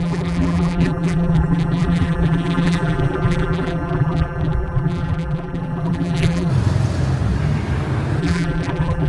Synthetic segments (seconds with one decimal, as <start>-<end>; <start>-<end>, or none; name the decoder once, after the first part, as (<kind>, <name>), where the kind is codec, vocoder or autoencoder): 0.0-6.5 (vocoder, BigVGAN v2); 8.2-9.1